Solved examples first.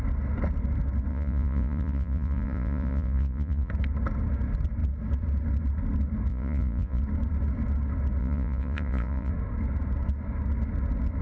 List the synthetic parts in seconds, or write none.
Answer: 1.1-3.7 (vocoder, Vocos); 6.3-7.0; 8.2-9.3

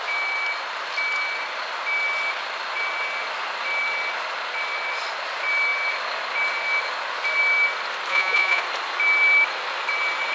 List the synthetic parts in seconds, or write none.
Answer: 8.1-8.6 (vocoder, Vocos)

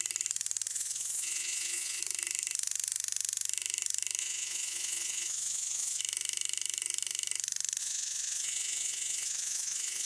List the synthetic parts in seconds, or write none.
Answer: 0.7-2.0 (vocoder, Vocos); 4.2-6.0; 7.8-10.1

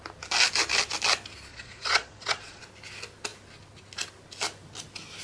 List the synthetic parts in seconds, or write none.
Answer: 1.5-2.6 (vocoder, Vocos)

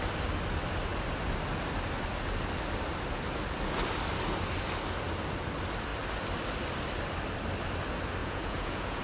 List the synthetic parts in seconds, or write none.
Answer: 8.2-9.0 (vocoder, Vocos)

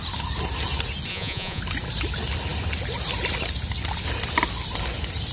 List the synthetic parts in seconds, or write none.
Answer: 1.1-1.6 (vocoder, Vocos)